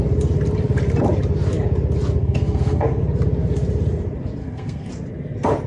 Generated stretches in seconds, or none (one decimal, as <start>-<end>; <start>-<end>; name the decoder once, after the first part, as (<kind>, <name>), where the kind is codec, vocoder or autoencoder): 2.2-3.0 (codec, SNAC); 4.4-4.9

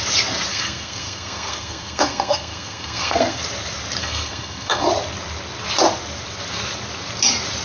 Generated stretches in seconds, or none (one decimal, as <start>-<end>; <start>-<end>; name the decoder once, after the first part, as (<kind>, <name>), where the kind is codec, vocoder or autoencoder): 0.5-3.4 (codec, SNAC); 4.0-4.9

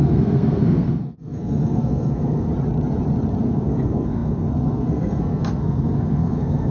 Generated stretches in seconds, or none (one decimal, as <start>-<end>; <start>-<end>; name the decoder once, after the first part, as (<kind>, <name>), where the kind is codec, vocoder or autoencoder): 0.0-2.5 (codec, SNAC); 3.4-6.7